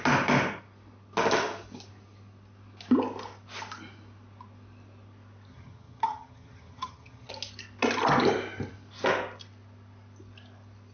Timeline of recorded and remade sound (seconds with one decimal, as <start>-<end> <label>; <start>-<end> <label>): 0.0-5.5 recorded; 5.5-7.3 remade; 7.3-10.9 recorded

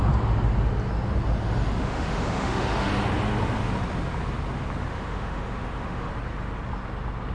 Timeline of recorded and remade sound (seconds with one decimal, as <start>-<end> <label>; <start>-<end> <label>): 0.0-1.8 recorded; 1.8-2.9 remade; 2.9-4.9 recorded; 4.9-6.1 remade; 6.1-7.3 recorded